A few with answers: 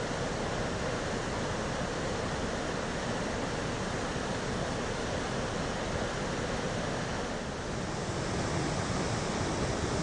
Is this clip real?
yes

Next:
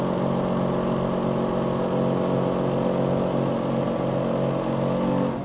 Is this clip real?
yes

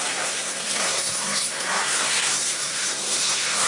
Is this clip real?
no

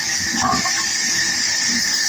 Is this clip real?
no